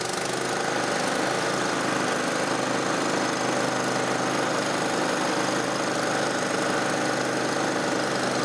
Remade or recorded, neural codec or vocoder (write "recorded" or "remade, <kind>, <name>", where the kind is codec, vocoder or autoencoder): recorded